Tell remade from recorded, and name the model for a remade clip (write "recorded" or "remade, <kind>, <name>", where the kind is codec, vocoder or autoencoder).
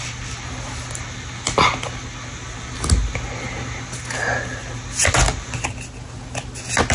recorded